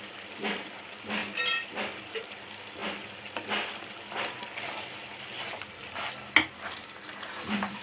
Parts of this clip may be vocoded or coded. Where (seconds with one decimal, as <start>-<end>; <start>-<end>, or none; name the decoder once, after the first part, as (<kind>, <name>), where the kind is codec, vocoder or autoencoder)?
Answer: 0.0-1.2 (vocoder, BigVGAN v2); 2.2-2.8; 6.5-7.8